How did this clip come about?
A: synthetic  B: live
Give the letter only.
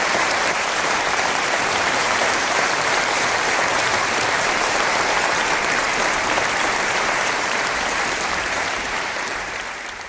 A